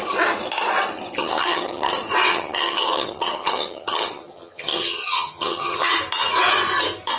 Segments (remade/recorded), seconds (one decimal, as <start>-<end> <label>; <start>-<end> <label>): 0.0-1.2 recorded; 1.2-1.9 remade; 1.9-2.3 recorded; 2.3-5.9 remade; 5.9-7.2 recorded